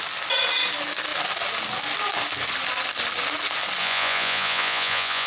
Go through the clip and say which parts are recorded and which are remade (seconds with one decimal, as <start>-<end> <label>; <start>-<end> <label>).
0.0-3.8 recorded; 3.8-5.3 remade